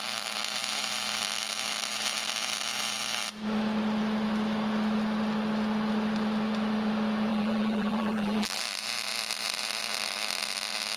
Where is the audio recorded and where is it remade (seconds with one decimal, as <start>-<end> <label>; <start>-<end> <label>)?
0.0-7.3 recorded; 7.3-8.6 remade; 8.6-11.0 recorded